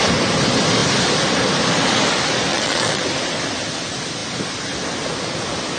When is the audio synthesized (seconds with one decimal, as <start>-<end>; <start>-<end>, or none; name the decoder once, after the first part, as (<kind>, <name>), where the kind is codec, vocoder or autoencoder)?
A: 2.5-3.0 (vocoder, Vocos)